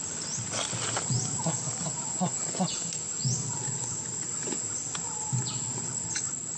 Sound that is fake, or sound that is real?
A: real